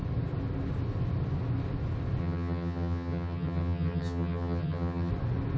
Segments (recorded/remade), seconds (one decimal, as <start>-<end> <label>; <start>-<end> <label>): 0.0-2.2 recorded; 2.2-5.1 remade; 5.1-5.6 recorded